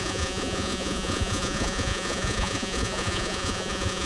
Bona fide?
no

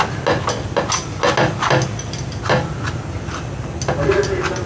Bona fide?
yes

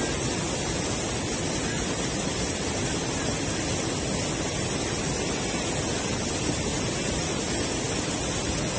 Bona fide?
yes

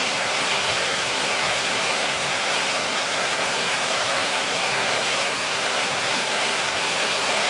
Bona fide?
no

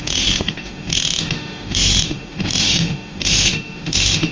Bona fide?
no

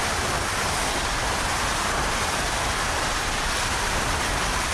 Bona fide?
no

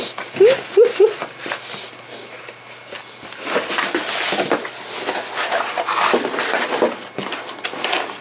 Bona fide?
yes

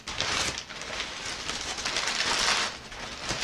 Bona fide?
yes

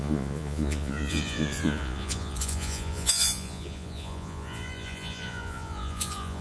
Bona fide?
no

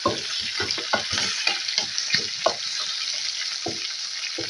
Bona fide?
yes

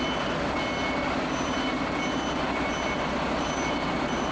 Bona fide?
yes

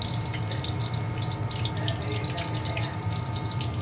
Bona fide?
yes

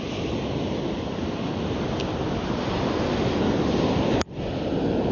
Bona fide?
yes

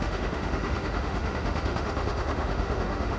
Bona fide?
no